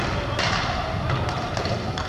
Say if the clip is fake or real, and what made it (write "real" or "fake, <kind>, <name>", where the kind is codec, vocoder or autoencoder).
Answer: real